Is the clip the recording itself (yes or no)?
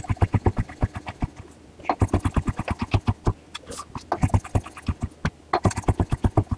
yes